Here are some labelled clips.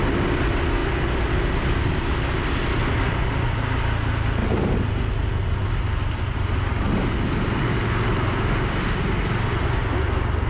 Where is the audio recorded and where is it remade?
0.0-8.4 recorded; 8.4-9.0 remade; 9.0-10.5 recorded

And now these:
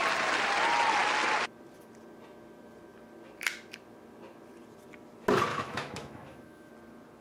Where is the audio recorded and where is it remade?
0.0-5.5 recorded; 5.5-6.7 remade; 6.7-7.2 recorded

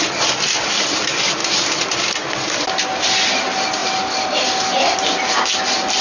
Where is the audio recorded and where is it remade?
0.0-6.0 recorded

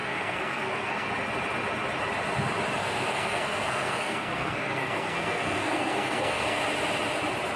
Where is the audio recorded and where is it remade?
0.0-1.1 remade; 1.1-2.8 recorded; 2.8-6.6 remade; 6.6-7.6 recorded

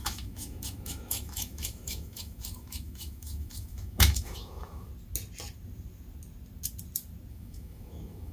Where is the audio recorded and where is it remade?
0.0-4.9 remade; 4.9-7.3 recorded; 7.3-8.3 remade

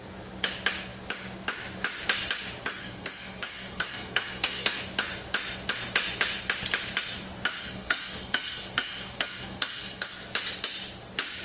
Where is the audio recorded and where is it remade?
0.0-2.8 recorded; 2.8-4.8 remade; 4.8-7.6 recorded; 7.6-10.1 remade; 10.1-11.4 recorded